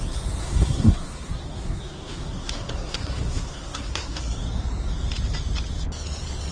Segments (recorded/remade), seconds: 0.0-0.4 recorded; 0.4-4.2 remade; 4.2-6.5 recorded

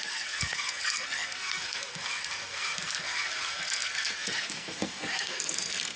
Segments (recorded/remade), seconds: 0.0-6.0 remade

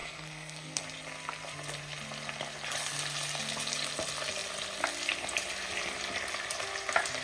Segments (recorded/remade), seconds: 0.0-0.8 remade; 0.8-7.2 recorded

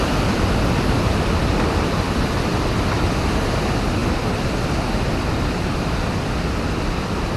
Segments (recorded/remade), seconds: 0.0-7.4 recorded

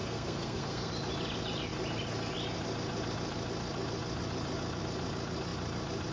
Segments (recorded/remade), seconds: 0.0-0.9 remade; 0.9-6.1 recorded